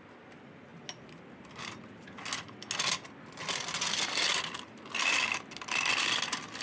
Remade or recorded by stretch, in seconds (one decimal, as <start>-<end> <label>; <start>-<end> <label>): 0.0-6.6 recorded